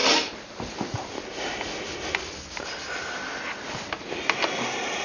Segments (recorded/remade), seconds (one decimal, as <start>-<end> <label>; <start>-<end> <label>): 0.0-2.3 recorded; 2.3-5.0 remade